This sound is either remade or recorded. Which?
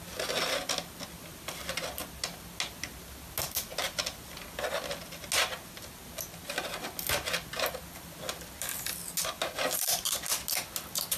recorded